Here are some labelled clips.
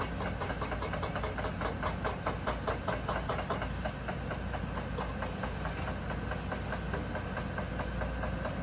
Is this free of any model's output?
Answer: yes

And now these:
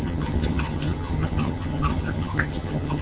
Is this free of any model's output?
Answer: no